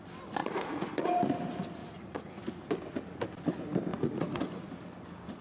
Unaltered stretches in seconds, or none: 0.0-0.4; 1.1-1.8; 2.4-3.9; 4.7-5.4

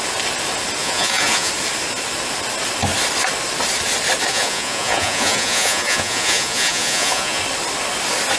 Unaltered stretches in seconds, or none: 0.0-0.8; 1.5-4.3; 7.4-8.4

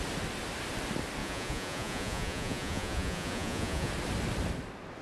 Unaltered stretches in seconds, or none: 0.0-1.2; 3.9-5.0

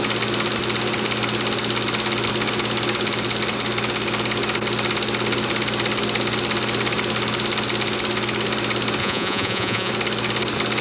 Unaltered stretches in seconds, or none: 0.0-9.0; 9.9-10.8